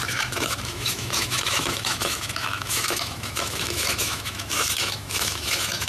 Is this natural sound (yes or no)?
no